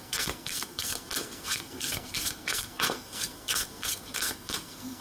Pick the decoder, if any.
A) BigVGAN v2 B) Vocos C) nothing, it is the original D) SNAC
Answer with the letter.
D